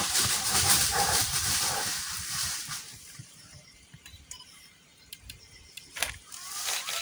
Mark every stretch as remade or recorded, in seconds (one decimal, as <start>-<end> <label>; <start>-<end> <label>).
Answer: 0.0-2.6 remade; 2.6-3.1 recorded; 3.1-6.0 remade; 6.0-7.0 recorded

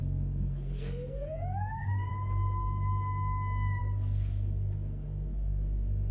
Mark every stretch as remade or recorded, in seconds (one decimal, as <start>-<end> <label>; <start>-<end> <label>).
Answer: 0.0-2.1 remade; 2.1-3.8 recorded; 3.8-6.1 remade

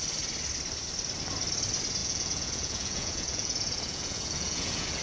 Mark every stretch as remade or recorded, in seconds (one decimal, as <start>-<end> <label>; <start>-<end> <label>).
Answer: 0.0-2.0 recorded; 2.0-5.0 remade

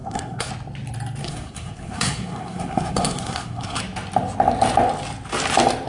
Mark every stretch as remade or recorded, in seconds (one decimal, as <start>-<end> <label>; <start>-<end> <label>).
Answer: 0.0-0.5 remade; 0.5-1.2 recorded; 1.2-3.8 remade; 3.8-5.9 recorded

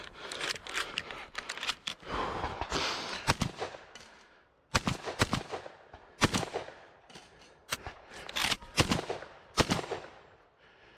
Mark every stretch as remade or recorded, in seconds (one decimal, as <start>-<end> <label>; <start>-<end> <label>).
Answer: 0.0-11.0 recorded

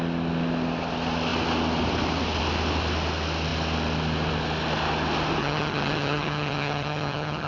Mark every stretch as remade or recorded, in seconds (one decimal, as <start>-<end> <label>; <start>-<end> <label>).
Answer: 0.0-5.4 recorded; 5.4-7.5 remade

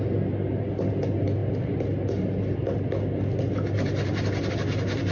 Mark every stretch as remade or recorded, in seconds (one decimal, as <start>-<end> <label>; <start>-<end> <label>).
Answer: 0.0-5.1 recorded

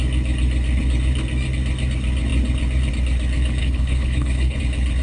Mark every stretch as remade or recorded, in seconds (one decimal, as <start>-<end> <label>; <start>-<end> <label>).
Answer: 0.0-3.6 recorded; 3.6-4.6 remade; 4.6-5.0 recorded